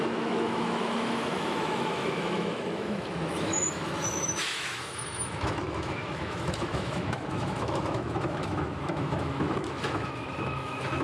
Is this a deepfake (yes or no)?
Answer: yes